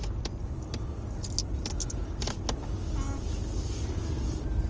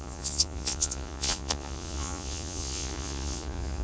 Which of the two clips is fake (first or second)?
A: second